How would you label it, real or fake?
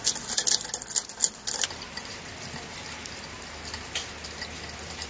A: real